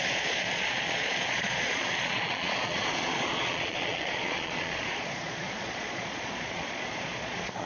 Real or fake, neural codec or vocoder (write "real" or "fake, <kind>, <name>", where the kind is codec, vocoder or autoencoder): fake, vocoder, Vocos